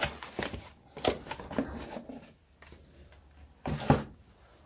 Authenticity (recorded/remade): recorded